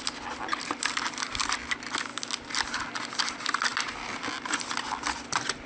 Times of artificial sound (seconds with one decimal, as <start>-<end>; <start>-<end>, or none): none